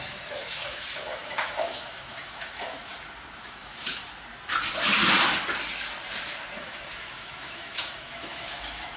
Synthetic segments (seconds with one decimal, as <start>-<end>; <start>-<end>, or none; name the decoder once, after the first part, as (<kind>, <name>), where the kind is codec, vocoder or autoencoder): 0.0-2.9 (autoencoder, DAC-VAE); 3.4-4.0; 6.6-9.0